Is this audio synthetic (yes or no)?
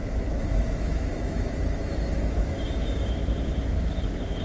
yes